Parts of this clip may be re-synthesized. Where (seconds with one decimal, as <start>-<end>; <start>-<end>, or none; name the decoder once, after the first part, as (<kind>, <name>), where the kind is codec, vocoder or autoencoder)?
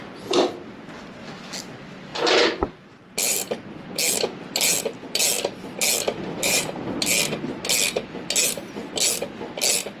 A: 2.1-3.1 (vocoder, BigVGAN v2); 6.1-6.8